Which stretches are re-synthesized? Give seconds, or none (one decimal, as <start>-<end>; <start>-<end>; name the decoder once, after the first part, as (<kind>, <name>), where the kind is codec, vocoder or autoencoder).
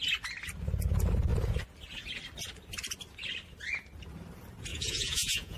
4.7-5.6 (vocoder, Vocos)